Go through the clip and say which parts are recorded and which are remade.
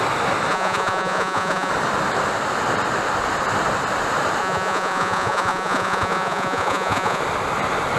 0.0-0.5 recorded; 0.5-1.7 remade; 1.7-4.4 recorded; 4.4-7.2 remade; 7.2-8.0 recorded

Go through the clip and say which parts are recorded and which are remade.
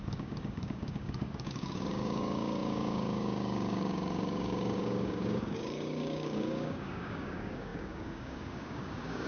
0.0-9.3 remade